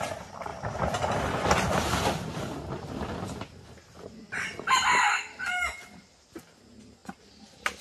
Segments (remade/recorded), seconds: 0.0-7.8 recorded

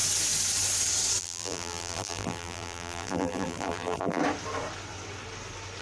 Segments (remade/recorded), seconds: 0.0-1.2 recorded; 1.2-4.2 remade; 4.2-5.8 recorded